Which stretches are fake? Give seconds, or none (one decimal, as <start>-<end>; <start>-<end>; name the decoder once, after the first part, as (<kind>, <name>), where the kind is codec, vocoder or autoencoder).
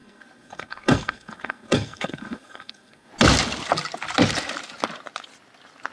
0.0-3.1 (codec, SNAC)